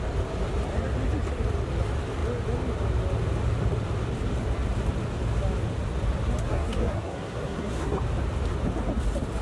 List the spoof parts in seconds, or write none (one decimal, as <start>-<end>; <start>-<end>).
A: 6.5-8.0